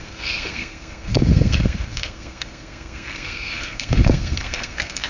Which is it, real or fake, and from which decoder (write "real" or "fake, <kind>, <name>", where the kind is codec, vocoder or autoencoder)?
fake, codec, SNAC